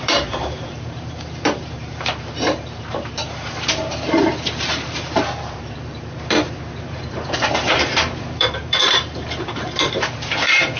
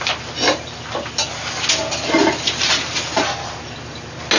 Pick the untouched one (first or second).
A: second